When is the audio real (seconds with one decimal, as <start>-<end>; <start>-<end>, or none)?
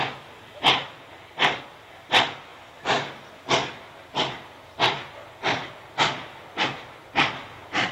0.0-7.9